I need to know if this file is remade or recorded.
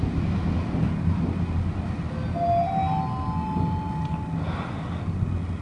recorded